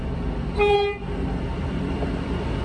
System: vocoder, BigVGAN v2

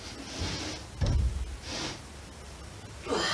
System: none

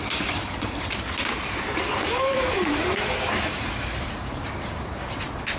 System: vocoder, BigVGAN v2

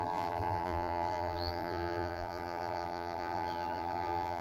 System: vocoder, BigVGAN v2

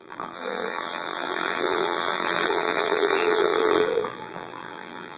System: vocoder, BigVGAN v2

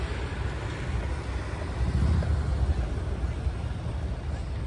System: none